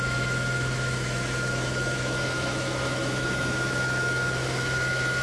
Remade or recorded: remade